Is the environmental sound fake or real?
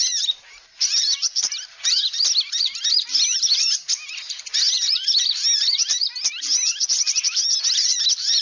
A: fake